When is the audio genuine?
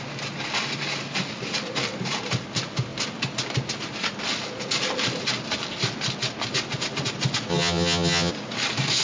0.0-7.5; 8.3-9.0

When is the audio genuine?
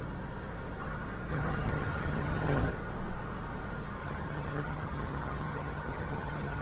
0.0-1.3; 2.7-4.0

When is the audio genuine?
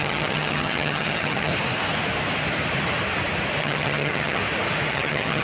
1.5-3.6; 4.4-4.9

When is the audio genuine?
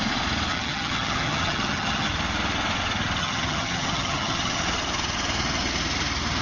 0.0-0.5; 2.1-3.2; 4.6-6.4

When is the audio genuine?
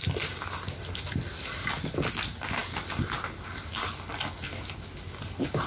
0.0-5.7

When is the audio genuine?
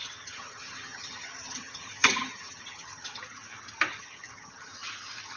3.2-3.9; 4.7-5.4